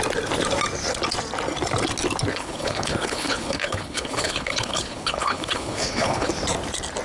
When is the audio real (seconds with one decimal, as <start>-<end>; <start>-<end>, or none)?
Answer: 0.0-2.3; 6.3-7.0